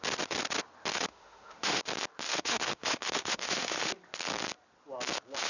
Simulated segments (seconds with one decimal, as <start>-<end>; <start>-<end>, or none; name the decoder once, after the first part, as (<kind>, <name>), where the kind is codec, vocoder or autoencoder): 1.1-1.8 (autoencoder, DAC-VAE); 2.3-3.9

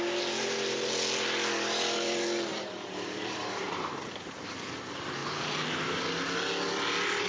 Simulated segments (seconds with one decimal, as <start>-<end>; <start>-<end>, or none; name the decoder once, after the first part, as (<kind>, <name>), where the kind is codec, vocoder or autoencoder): 2.5-4.1 (vocoder, BigVGAN v2); 5.2-6.0

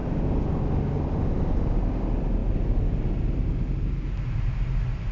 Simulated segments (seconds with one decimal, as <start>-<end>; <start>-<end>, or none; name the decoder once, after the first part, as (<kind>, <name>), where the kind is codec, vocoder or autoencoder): none